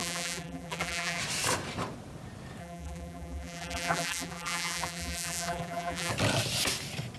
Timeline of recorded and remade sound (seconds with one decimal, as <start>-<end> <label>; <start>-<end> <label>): 0.0-1.2 remade; 1.2-2.6 recorded; 2.6-6.1 remade; 6.1-7.2 recorded